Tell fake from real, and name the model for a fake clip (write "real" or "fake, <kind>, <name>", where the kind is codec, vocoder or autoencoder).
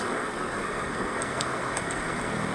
fake, codec, SNAC